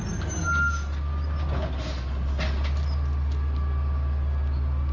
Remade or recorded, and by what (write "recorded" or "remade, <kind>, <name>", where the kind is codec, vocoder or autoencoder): recorded